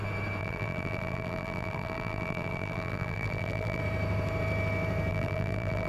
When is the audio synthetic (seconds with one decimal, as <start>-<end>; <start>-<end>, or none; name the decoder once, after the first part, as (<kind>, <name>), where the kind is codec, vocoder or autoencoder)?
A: 0.4-3.8 (vocoder, BigVGAN v2); 5.1-5.9